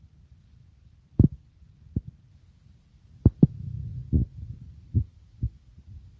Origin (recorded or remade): recorded